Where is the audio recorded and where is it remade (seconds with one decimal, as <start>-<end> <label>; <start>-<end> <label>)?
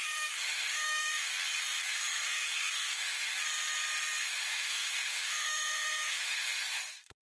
0.0-1.3 remade; 1.3-1.9 recorded; 1.9-3.3 remade; 3.3-4.2 recorded; 4.2-7.2 remade